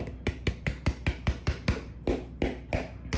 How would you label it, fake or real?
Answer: real